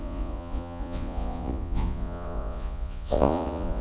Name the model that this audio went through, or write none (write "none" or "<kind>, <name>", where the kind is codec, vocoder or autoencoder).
vocoder, Vocos